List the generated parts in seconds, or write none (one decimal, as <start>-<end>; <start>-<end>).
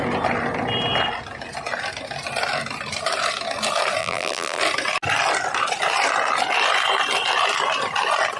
4.0-4.6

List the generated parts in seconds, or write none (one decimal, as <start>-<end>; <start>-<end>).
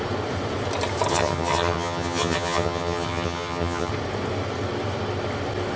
1.1-3.9